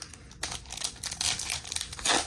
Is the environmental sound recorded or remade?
recorded